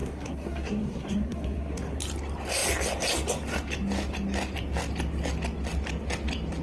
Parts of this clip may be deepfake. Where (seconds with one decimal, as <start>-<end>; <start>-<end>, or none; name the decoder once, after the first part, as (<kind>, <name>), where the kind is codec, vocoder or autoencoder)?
0.0-2.0 (codec, SNAC)